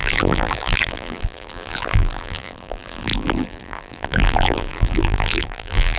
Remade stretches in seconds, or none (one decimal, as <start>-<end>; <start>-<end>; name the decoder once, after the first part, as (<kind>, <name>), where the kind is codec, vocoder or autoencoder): 0.0-6.0 (vocoder, BigVGAN v2)